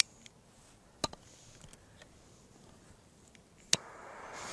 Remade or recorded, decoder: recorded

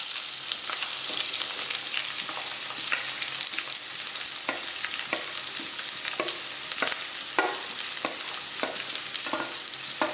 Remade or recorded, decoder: recorded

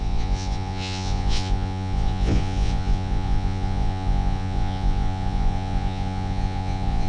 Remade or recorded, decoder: remade, vocoder, Vocos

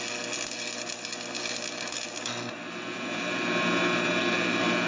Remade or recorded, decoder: recorded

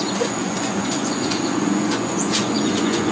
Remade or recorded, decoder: remade, vocoder, Vocos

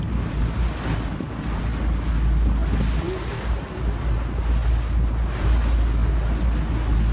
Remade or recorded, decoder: recorded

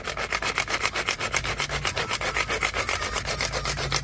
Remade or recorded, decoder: recorded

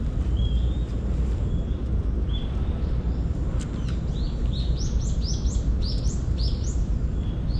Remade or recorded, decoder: recorded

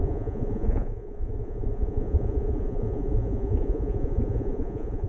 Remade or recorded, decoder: remade, vocoder, Vocos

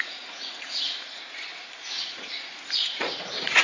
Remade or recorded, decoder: remade, vocoder, Vocos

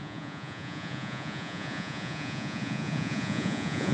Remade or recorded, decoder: remade, vocoder, Vocos